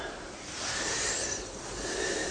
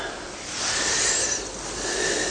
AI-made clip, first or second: first